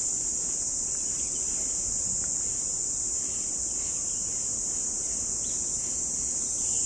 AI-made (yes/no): no